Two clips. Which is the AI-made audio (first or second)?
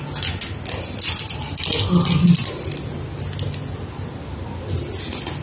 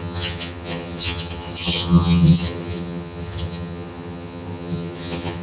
second